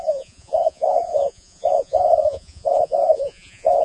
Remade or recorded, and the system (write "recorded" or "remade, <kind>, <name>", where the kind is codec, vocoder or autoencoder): remade, vocoder, Vocos